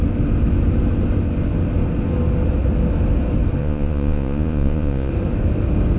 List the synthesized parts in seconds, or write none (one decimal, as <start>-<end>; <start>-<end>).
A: 3.6-5.1